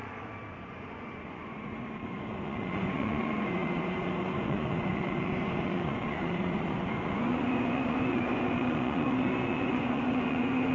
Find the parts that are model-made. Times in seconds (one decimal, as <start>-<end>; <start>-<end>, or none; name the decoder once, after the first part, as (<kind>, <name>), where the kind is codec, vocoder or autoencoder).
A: 0.6-10.7 (vocoder, Vocos)